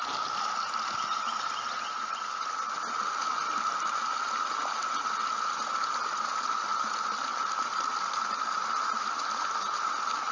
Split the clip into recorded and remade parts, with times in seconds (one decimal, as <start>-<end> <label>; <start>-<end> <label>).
0.0-10.3 recorded